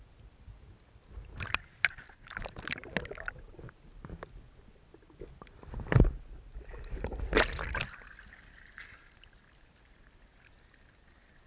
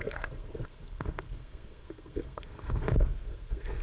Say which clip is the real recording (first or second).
first